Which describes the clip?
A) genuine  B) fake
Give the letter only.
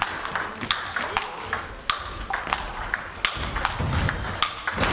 A